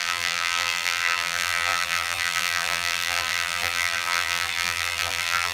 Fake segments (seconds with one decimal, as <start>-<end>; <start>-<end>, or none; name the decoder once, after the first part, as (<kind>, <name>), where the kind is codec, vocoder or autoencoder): 0.0-5.5 (vocoder, BigVGAN v2)

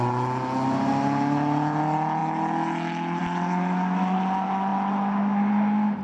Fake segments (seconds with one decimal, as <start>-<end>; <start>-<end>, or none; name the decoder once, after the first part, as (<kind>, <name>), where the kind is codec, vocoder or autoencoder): none

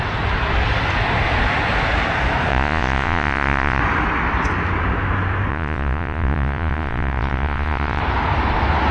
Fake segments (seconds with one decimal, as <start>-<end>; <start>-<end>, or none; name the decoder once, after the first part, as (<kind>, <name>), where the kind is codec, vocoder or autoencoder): 2.5-3.8 (vocoder, Vocos); 5.5-8.0